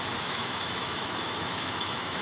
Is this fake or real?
fake